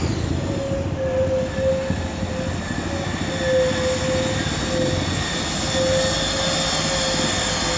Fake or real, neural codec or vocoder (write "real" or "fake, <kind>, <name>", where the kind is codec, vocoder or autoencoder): real